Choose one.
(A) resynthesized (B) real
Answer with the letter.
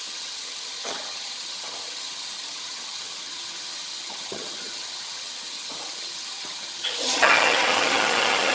A